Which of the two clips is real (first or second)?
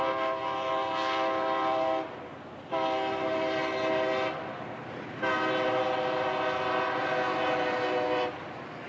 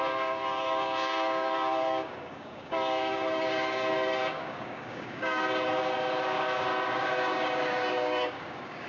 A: first